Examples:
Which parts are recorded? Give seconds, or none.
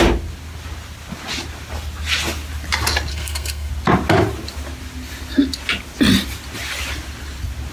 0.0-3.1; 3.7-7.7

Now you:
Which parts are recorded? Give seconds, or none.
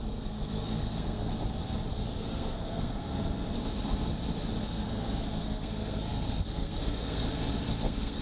1.3-1.9; 3.1-4.6; 7.2-7.7